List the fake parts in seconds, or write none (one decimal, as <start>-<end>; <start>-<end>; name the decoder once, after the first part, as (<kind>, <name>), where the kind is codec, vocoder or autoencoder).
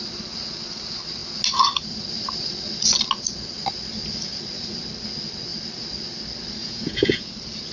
6.6-7.3 (vocoder, Vocos)